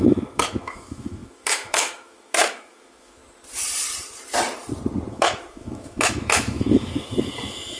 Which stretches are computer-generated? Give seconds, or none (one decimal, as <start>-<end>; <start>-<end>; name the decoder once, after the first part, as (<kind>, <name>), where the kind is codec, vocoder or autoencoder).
0.0-3.2 (autoencoder, DAC-VAE); 5.1-7.8